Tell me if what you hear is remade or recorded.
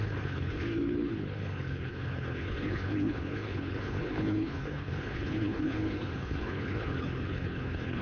remade